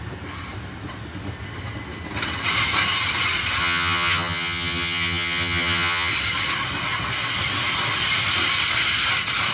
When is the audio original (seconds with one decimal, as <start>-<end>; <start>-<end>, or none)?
0.0-3.6; 6.1-9.5